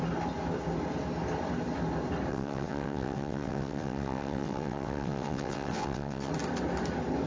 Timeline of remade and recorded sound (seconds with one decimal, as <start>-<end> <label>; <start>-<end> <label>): 0.0-2.3 recorded; 2.3-6.3 remade; 6.3-7.3 recorded